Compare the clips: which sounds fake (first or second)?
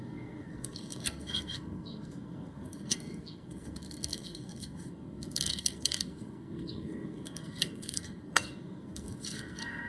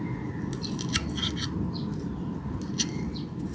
first